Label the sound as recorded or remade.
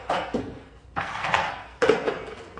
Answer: remade